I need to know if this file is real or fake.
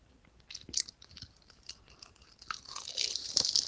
real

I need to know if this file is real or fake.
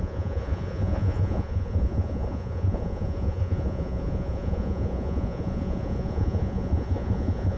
fake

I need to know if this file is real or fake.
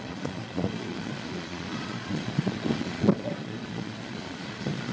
fake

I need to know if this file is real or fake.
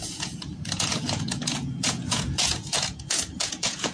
fake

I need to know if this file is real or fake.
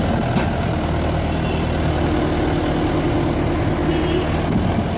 real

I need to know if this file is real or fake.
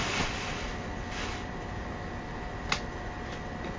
real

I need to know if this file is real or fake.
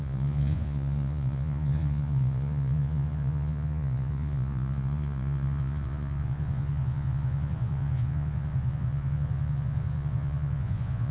fake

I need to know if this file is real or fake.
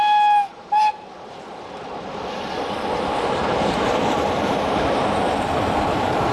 real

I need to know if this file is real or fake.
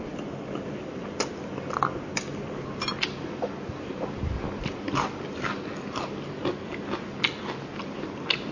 real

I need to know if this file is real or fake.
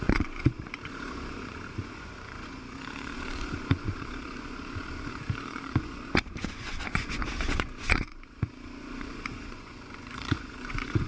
fake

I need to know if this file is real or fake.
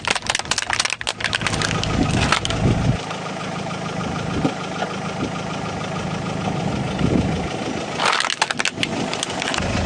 real